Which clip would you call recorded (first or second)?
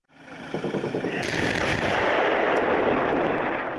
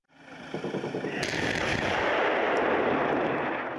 second